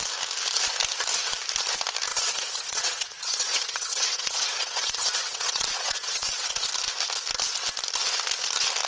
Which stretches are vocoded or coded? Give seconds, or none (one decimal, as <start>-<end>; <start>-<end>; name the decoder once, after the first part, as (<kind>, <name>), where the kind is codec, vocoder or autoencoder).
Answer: 2.1-6.7 (vocoder, WaveNeXt)